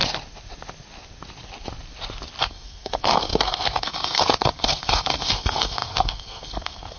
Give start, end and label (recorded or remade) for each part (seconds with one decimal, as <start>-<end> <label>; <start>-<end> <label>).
0.0-2.4 recorded; 2.4-7.0 remade